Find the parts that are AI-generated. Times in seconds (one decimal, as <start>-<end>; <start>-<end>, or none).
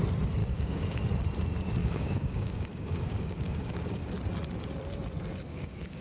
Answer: 0.4-1.0; 1.8-4.1; 5.5-6.0